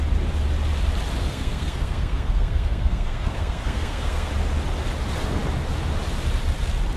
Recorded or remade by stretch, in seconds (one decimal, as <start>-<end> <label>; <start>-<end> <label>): 0.0-1.2 recorded; 1.2-4.3 remade; 4.3-7.0 recorded